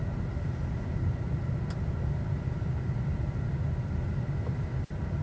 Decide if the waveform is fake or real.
real